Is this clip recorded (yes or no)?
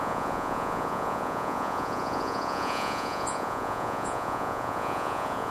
no